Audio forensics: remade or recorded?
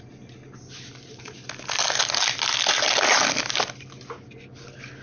recorded